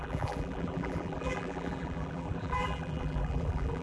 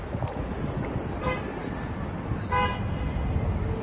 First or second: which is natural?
second